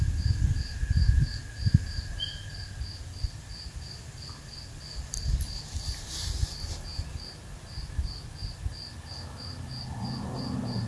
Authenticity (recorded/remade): recorded